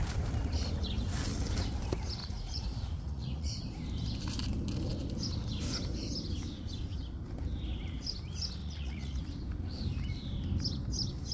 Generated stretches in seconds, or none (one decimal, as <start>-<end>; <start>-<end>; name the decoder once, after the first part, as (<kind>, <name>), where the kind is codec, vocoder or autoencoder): 2.2-3.5 (vocoder, Vocos); 8.6-9.2